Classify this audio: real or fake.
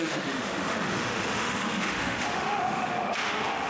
fake